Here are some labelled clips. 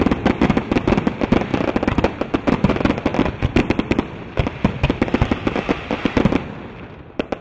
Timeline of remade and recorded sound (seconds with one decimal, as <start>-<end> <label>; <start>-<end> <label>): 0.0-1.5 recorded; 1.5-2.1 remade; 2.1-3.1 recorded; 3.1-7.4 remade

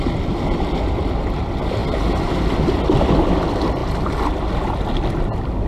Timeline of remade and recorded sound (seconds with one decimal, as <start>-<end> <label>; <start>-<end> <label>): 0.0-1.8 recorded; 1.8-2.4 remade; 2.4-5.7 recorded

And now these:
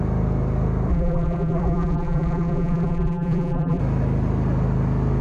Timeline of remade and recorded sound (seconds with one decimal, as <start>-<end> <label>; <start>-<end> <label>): 0.0-0.9 recorded; 0.9-3.8 remade; 3.8-5.2 recorded

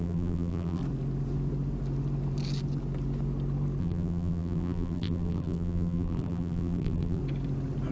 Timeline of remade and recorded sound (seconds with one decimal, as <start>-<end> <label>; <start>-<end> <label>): 0.0-0.8 remade; 0.8-3.8 recorded; 3.8-7.2 remade; 7.2-7.9 recorded

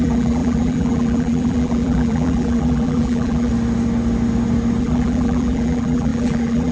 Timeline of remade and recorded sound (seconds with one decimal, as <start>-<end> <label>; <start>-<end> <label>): 0.0-3.5 remade; 3.5-4.8 recorded; 4.8-6.7 remade